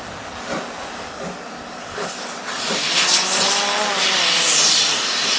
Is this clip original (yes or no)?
yes